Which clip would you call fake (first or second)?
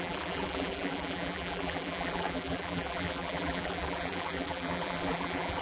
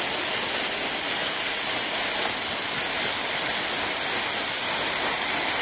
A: first